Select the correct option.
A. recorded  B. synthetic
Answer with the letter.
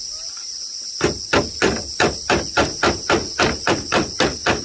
A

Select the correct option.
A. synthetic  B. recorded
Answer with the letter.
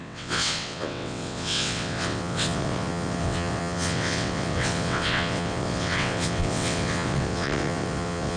A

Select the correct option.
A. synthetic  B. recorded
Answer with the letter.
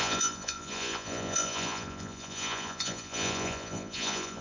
A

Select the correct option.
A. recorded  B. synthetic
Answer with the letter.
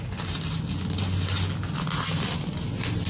A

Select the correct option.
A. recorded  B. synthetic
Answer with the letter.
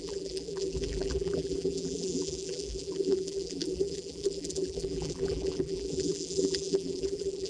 B